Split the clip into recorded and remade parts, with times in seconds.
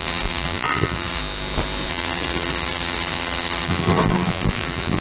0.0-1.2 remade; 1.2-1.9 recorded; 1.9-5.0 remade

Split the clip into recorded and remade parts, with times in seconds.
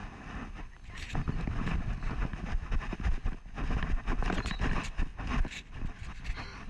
0.0-6.7 recorded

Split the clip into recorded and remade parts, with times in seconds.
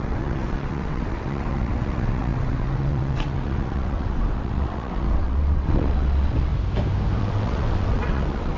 0.0-6.5 remade; 6.5-7.2 recorded; 7.2-8.6 remade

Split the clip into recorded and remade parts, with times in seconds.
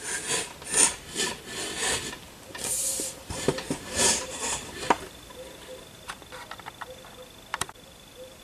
0.0-2.5 recorded; 2.5-6.2 remade; 6.2-7.5 recorded; 7.5-8.4 remade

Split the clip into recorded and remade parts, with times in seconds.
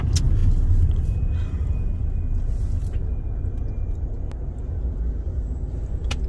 0.0-6.3 recorded